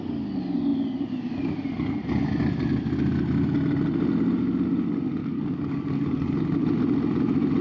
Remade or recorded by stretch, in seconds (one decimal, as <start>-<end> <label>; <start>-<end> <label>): 0.0-5.2 recorded; 5.2-6.4 remade; 6.4-7.6 recorded